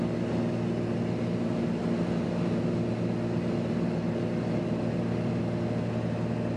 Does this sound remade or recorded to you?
recorded